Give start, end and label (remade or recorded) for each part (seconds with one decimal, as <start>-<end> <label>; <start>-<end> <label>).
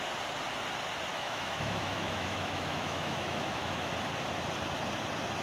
0.0-1.1 recorded; 1.1-3.9 remade; 3.9-5.4 recorded